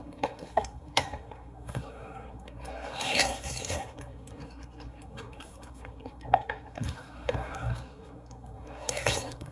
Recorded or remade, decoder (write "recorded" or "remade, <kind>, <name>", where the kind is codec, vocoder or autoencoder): remade, codec, SNAC